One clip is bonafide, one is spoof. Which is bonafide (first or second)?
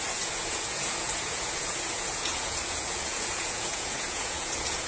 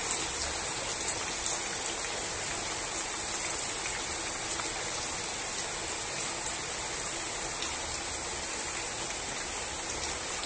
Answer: second